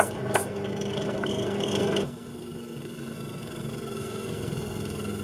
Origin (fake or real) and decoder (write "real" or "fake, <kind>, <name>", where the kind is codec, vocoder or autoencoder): fake, codec, SNAC